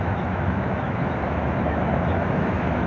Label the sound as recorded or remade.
remade